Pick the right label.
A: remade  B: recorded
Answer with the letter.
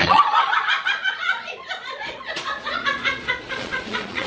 A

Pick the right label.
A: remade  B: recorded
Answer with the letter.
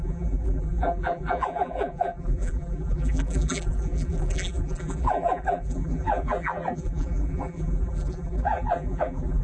A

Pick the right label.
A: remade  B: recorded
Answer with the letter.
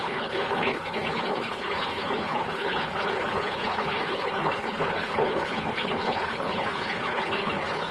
A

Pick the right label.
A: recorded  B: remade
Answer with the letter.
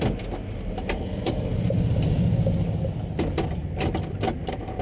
A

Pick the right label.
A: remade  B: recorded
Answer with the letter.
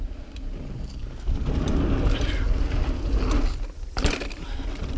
B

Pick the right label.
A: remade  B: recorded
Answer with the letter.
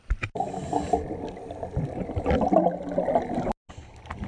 B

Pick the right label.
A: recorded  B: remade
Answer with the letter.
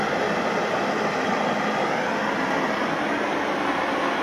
A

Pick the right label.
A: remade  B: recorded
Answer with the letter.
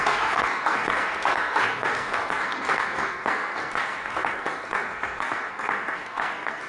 A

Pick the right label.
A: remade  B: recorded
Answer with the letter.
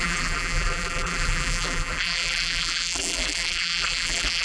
A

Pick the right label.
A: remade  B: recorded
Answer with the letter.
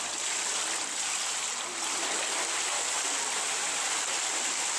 B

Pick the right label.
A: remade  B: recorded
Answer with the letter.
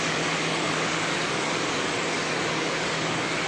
A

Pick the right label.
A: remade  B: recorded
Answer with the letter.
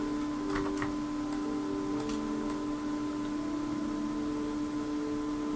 B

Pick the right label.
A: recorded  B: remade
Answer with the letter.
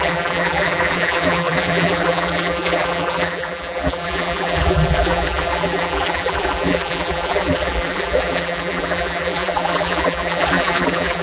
B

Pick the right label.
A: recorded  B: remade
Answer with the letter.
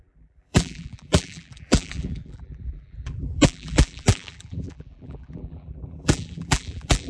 B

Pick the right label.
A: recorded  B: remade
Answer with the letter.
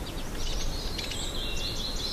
A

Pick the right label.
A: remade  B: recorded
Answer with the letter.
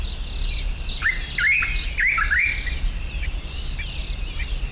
B